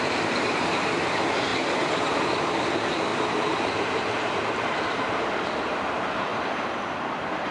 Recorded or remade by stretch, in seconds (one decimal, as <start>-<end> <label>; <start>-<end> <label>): 0.0-1.5 remade; 1.5-2.3 recorded; 2.3-7.5 remade